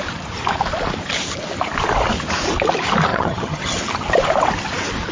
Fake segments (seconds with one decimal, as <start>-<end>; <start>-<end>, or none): 3.1-3.8